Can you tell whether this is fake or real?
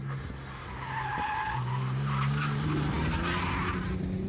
real